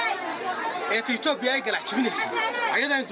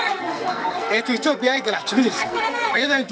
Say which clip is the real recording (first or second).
first